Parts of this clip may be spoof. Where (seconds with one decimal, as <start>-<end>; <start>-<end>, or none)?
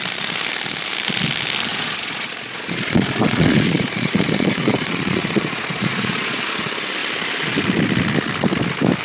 1.7-6.4